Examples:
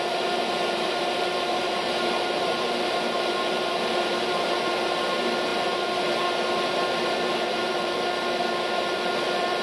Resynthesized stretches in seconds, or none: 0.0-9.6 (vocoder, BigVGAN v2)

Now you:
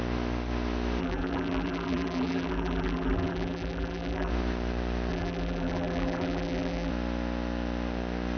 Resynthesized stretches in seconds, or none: 1.0-4.3 (vocoder, BigVGAN v2); 5.1-6.9

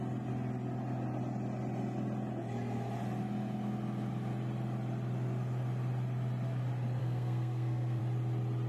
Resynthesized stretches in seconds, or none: 7.0-8.0 (codec, SNAC)

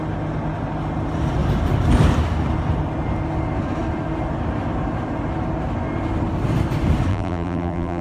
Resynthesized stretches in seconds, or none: 7.1-8.0 (vocoder, BigVGAN v2)